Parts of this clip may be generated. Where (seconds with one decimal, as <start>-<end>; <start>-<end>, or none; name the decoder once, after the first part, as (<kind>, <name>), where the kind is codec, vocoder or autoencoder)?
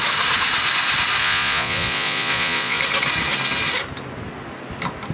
1.2-2.8 (vocoder, Vocos)